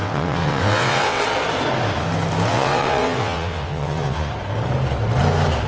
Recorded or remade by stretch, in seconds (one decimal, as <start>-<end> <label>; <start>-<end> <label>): 0.0-1.2 remade; 1.2-2.5 recorded; 2.5-4.3 remade; 4.3-5.7 recorded